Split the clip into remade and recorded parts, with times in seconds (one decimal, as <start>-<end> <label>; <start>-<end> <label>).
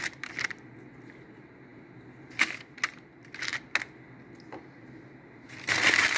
0.0-6.2 recorded